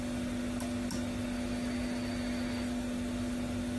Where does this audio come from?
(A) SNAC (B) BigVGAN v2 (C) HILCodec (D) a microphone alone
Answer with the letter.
D